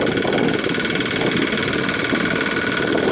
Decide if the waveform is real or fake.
real